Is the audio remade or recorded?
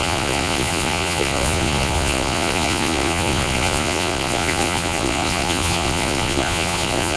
remade